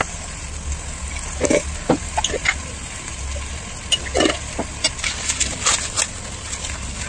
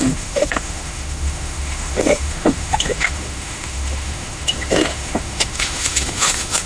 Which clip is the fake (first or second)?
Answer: second